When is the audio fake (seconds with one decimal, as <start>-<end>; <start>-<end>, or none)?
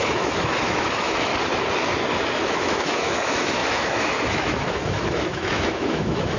0.0-1.3; 2.2-6.4